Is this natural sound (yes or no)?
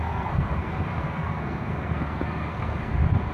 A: no